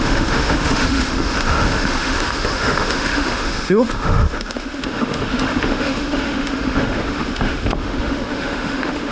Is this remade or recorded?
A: remade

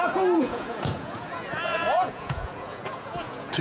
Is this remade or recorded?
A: remade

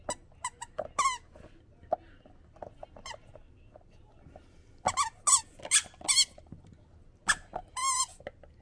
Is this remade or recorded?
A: recorded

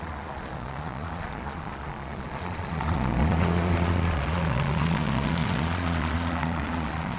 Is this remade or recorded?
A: remade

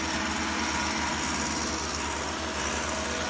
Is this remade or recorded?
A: recorded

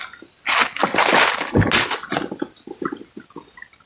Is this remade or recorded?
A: recorded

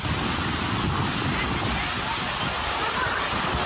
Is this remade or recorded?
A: recorded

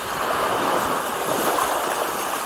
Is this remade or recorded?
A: recorded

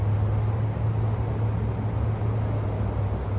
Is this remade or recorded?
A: recorded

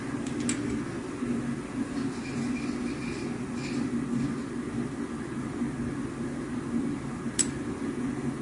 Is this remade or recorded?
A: recorded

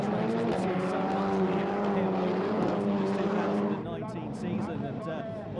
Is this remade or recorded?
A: recorded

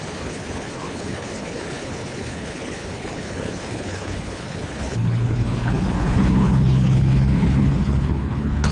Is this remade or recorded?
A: remade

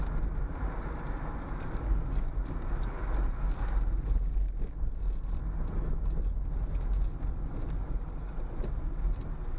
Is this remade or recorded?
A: recorded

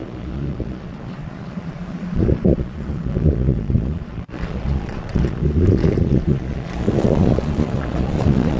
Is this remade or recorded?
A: remade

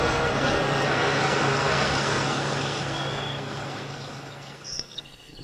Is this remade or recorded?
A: remade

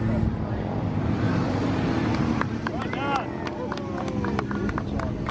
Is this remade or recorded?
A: recorded